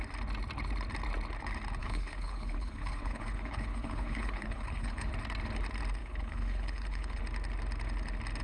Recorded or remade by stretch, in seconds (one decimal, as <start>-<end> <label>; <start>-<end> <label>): 0.0-1.8 recorded; 1.8-5.1 remade; 5.1-6.0 recorded; 6.0-7.2 remade; 7.2-8.4 recorded